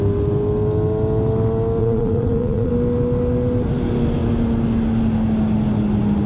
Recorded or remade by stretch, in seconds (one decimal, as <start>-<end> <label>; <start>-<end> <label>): 0.0-1.8 recorded; 1.8-2.7 remade; 2.7-6.3 recorded